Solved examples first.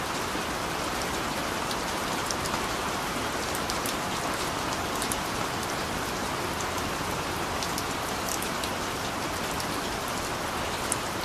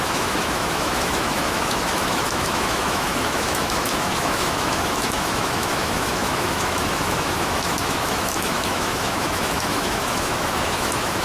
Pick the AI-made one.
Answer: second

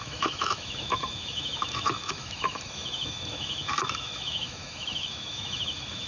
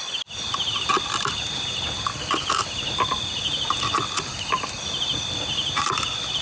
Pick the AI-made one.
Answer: first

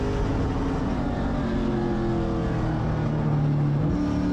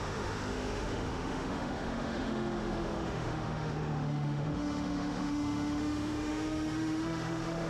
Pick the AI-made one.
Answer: second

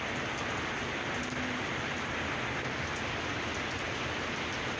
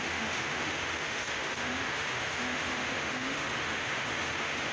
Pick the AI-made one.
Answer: second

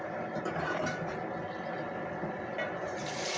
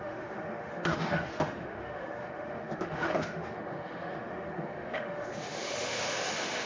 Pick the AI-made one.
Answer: second